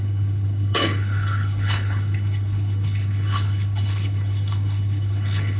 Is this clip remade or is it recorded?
remade